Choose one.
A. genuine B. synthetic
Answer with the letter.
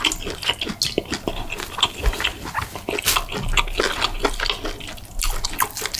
A